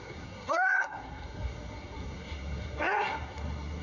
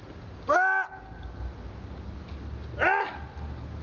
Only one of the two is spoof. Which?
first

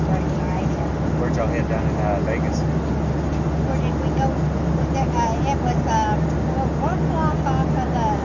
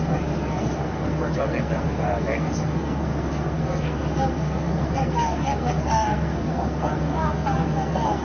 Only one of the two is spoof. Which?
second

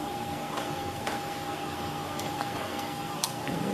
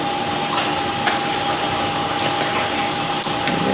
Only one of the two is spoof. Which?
first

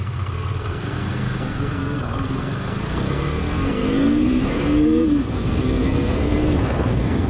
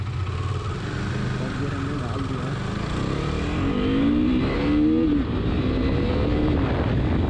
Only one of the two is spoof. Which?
first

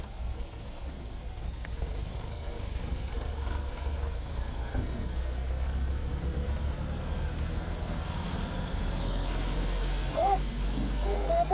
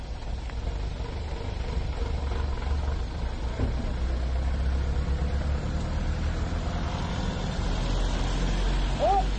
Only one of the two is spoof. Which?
first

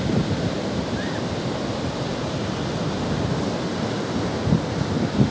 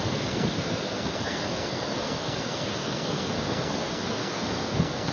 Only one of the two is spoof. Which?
second